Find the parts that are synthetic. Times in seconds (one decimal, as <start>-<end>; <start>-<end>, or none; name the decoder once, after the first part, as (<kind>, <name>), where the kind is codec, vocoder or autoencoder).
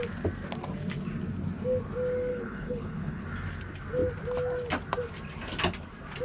2.3-3.2 (codec, HILCodec)